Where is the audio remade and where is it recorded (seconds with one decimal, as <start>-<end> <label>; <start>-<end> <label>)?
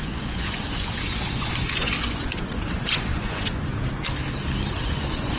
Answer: 0.0-3.7 remade; 3.7-4.7 recorded; 4.7-5.4 remade